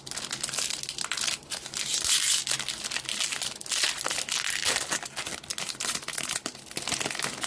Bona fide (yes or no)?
yes